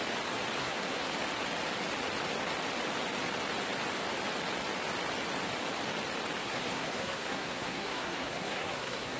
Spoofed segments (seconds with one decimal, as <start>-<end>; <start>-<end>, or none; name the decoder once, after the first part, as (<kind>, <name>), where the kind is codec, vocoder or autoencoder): 0.6-1.1 (codec, SNAC); 6.4-9.2